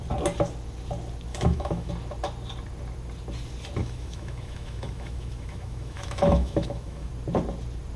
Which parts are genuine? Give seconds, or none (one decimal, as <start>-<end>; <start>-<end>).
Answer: 0.0-1.3; 1.9-3.8; 7.1-8.0